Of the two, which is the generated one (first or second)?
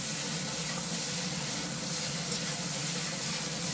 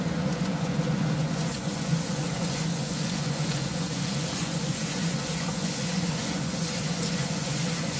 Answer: second